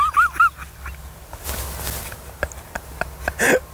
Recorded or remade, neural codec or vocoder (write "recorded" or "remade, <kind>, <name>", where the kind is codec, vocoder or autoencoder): recorded